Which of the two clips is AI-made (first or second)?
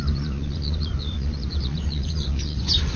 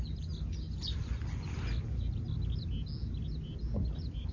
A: first